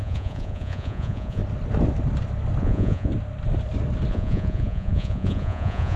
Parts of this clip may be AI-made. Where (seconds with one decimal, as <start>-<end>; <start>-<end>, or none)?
0.0-1.4; 2.6-3.1; 4.1-6.0